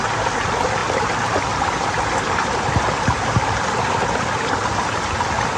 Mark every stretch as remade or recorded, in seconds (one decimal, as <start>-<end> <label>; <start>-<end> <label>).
0.0-5.6 recorded